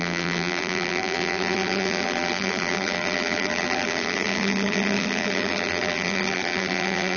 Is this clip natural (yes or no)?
no